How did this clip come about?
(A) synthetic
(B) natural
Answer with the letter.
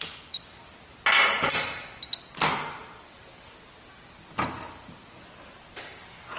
B